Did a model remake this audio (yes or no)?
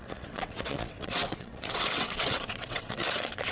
yes